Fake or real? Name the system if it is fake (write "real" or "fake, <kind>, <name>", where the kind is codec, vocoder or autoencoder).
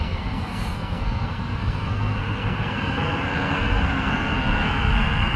fake, codec, SNAC